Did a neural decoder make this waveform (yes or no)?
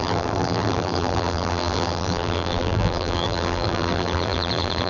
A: yes